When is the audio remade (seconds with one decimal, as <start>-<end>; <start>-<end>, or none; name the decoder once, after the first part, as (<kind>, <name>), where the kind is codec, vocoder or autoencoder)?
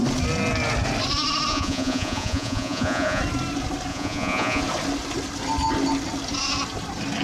1.5-3.2 (vocoder, Vocos); 3.9-4.6